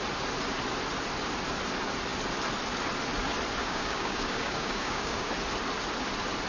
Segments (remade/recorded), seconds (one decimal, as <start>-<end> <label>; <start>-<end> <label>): 0.0-3.6 recorded; 3.6-5.3 remade; 5.3-6.5 recorded